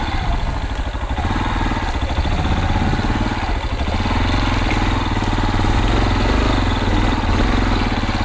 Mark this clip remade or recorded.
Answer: recorded